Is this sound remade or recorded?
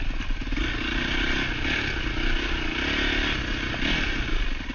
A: recorded